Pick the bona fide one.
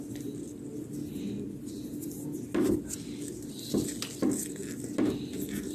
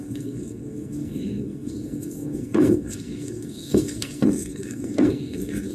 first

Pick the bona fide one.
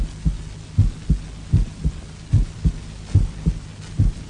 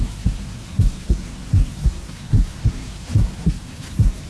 first